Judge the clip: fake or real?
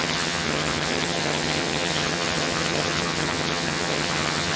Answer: fake